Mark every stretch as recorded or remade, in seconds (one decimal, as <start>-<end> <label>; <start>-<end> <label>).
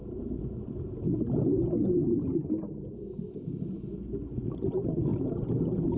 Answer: 0.0-6.0 recorded